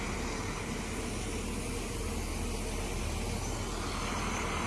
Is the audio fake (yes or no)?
no